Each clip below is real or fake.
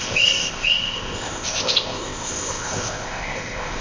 fake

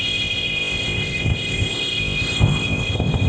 fake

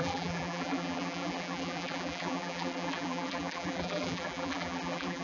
fake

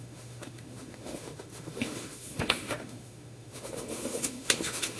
fake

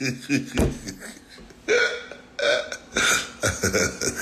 real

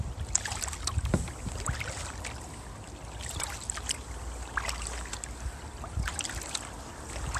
real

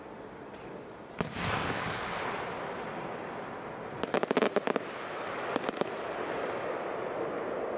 real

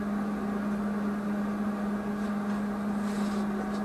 real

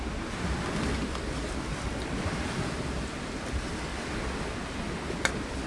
real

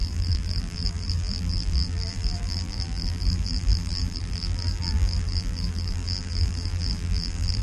fake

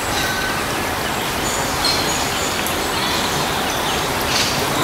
real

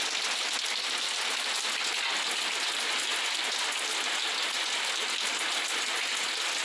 real